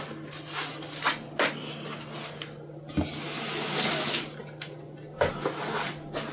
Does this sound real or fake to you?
real